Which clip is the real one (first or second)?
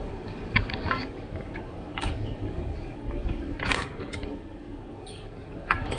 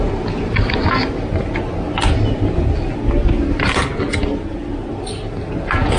second